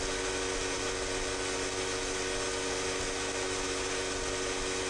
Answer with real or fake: real